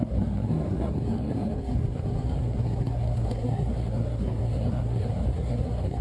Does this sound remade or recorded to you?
remade